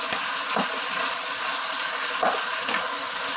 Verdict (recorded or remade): recorded